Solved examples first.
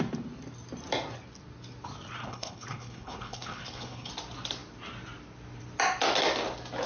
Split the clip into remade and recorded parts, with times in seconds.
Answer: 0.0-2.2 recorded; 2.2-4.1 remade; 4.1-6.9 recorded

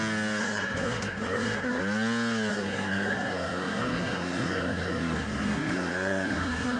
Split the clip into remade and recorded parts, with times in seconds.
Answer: 0.0-0.4 recorded; 0.4-1.8 remade; 1.8-2.5 recorded; 2.5-6.8 remade

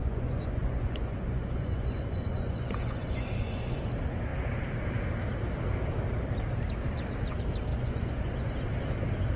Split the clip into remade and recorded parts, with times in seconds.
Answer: 0.0-3.8 remade; 3.8-7.7 recorded; 7.7-8.5 remade; 8.5-9.4 recorded

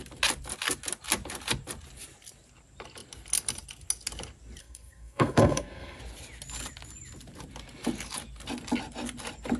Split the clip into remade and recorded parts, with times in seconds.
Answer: 0.0-4.6 recorded; 4.6-6.0 remade; 6.0-9.6 recorded